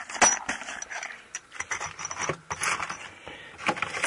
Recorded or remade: recorded